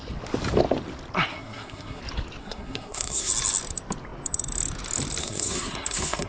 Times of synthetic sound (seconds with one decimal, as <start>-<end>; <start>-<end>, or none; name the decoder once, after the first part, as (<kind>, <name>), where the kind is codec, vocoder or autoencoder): 1.3-2.0 (codec, SNAC); 2.4-3.3; 5.2-6.3